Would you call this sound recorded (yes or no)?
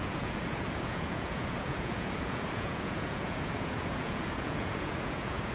no